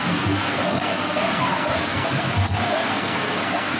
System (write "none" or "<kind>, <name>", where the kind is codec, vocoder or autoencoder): codec, SNAC